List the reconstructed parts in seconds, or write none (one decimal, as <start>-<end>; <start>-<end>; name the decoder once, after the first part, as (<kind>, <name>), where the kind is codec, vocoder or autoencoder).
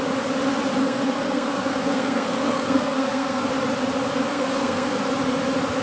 0.8-3.4 (codec, SNAC); 4.3-5.0